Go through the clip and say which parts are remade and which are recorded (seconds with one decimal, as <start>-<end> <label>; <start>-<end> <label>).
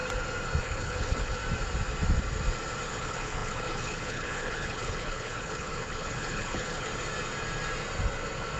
0.0-0.6 recorded; 0.6-1.4 remade; 1.4-2.9 recorded; 2.9-6.9 remade; 6.9-8.6 recorded